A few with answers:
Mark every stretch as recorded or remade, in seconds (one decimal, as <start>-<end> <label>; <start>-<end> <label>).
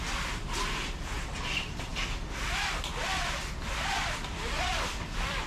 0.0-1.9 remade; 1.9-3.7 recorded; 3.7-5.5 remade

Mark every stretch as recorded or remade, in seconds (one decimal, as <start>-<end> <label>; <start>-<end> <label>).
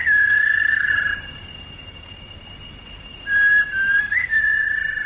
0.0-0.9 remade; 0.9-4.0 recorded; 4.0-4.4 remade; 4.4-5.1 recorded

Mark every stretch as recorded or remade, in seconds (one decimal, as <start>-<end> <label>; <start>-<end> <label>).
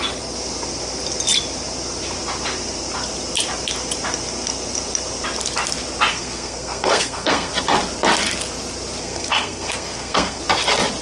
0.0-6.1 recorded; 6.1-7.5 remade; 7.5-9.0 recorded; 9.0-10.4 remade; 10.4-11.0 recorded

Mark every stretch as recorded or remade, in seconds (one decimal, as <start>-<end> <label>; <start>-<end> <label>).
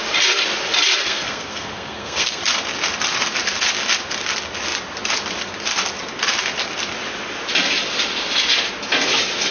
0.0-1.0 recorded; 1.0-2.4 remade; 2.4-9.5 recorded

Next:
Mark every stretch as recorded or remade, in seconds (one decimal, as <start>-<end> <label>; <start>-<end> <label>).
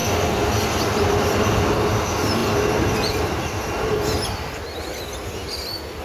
0.0-6.0 recorded